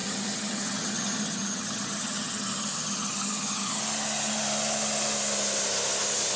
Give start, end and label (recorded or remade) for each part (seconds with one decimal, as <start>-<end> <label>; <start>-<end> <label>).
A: 0.0-3.8 remade; 3.8-6.4 recorded